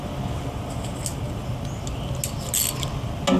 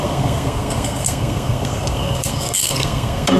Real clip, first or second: first